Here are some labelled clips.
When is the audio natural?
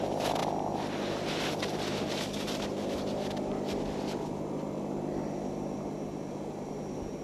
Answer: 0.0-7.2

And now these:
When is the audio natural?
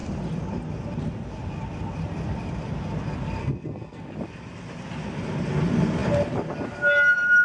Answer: 0.0-3.4; 4.0-7.4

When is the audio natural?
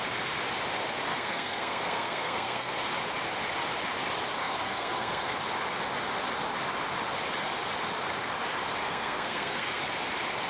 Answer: 0.0-1.1; 2.7-4.4; 5.3-8.8; 9.8-10.5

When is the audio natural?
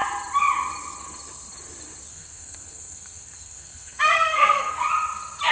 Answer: 0.0-2.1; 4.8-5.5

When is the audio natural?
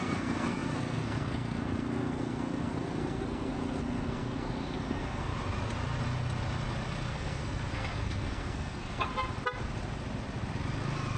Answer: 5.3-7.1; 9.1-11.2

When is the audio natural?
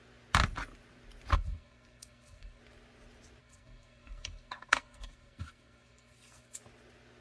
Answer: 0.0-1.3; 2.6-3.4; 6.6-7.2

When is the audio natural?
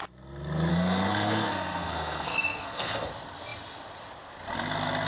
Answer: 0.0-0.7; 3.1-5.1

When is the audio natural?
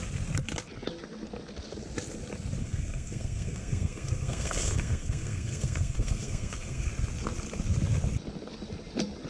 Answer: 0.0-2.6; 6.9-9.3